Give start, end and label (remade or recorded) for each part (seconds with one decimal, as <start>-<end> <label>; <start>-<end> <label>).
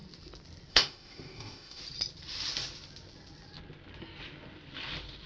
0.0-0.7 recorded; 0.7-1.8 remade; 1.8-5.3 recorded